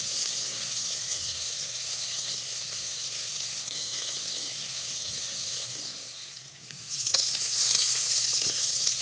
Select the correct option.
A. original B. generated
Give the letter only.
B